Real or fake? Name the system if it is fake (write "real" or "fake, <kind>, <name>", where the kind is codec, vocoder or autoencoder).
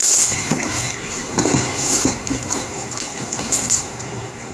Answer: fake, codec, SNAC